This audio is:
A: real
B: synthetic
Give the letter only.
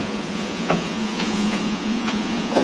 B